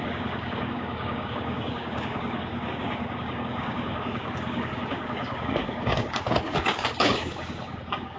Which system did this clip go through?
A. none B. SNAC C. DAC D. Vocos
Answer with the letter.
C